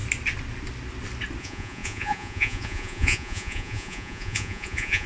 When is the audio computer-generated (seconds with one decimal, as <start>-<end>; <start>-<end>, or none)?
1.4-5.1